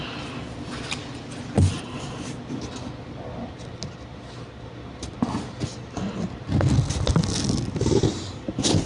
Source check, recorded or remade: recorded